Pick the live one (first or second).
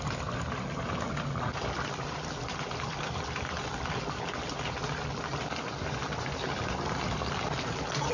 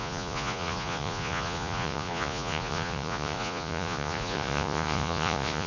first